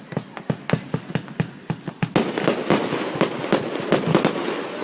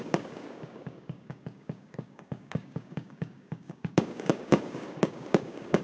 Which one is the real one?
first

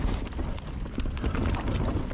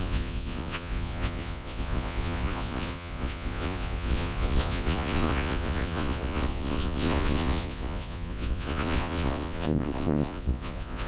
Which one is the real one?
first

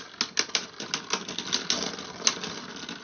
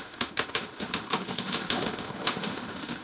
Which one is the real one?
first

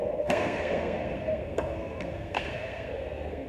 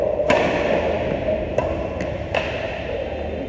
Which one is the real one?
second